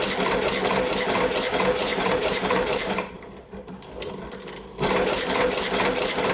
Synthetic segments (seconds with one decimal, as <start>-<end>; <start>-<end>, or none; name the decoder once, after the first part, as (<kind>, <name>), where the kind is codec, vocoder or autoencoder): 1.9-4.1 (vocoder, BigVGAN v2)